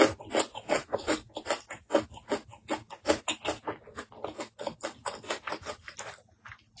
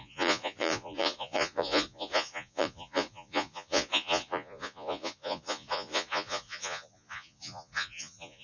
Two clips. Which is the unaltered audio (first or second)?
first